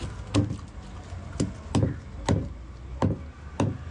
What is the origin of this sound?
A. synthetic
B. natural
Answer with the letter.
B